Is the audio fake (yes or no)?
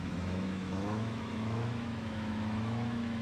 yes